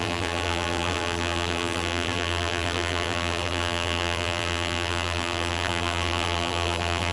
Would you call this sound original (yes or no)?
no